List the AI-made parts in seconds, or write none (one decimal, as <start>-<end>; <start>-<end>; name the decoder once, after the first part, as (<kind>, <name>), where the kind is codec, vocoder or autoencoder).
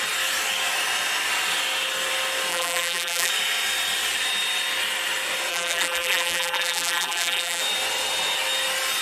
2.5-3.3 (vocoder, BigVGAN v2); 5.5-7.6